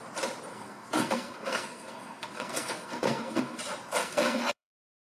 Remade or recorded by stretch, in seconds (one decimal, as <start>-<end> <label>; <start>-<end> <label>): 0.0-0.5 recorded; 0.5-3.6 remade; 3.6-4.0 recorded; 4.0-5.1 remade